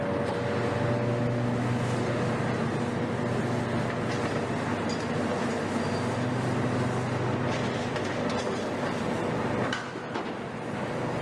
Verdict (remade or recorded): recorded